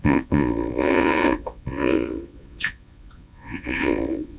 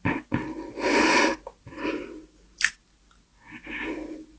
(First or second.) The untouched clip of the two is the second